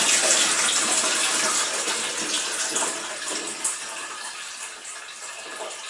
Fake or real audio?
real